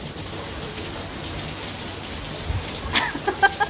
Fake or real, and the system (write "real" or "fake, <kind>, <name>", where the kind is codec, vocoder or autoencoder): real